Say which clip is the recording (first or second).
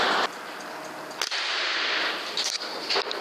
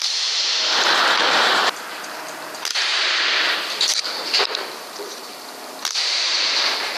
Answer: first